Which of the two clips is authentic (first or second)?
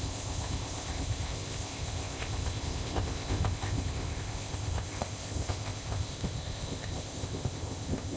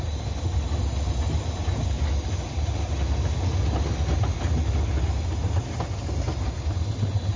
second